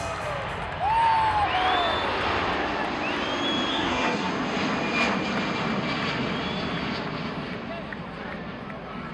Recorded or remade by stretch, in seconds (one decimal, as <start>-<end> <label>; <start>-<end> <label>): 0.0-3.7 recorded; 3.7-4.3 remade; 4.3-9.1 recorded